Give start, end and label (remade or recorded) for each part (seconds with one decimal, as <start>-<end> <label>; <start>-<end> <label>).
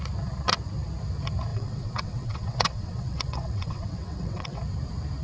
0.0-1.5 recorded; 1.5-4.6 remade; 4.6-5.2 recorded